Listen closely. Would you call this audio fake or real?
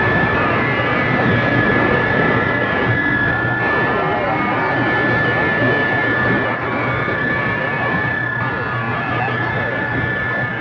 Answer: real